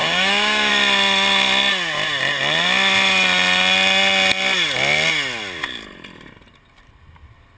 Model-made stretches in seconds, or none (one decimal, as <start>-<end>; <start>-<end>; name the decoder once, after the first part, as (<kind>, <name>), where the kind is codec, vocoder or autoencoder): 0.0-0.7 (codec, DAC)